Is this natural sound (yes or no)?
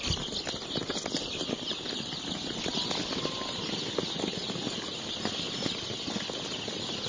yes